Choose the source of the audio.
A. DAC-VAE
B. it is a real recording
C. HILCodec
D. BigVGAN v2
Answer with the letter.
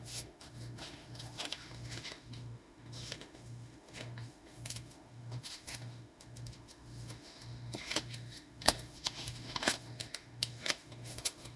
A